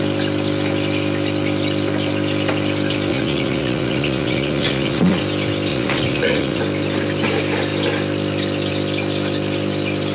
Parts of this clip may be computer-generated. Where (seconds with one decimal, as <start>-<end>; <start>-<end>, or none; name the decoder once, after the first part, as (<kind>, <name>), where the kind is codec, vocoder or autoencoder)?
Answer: 3.1-5.2 (vocoder, Vocos); 5.7-6.6